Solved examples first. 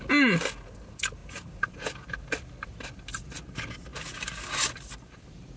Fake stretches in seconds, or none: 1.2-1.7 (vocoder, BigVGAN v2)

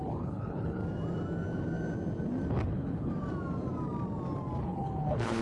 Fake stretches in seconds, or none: 0.0-0.8 (codec, HILCodec); 2.5-3.1; 4.6-5.4

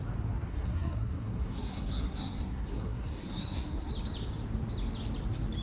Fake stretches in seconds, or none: 0.5-3.9 (codec, SNAC)

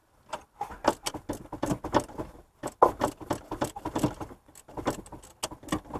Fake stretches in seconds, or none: none

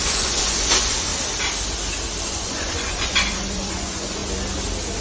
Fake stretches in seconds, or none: 0.0-1.1 (vocoder, Vocos); 2.2-4.2